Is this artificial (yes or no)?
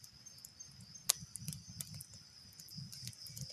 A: no